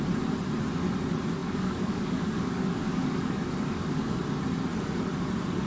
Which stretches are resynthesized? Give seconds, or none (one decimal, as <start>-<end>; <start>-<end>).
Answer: 1.4-4.2

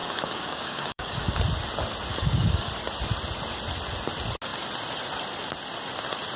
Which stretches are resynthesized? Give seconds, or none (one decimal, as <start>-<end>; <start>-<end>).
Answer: 0.0-1.4; 2.1-2.7

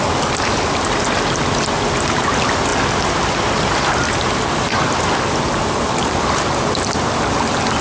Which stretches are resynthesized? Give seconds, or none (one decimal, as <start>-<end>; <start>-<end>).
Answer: none

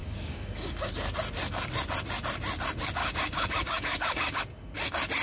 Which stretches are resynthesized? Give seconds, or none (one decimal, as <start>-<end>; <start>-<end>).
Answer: 0.0-0.9; 3.0-4.4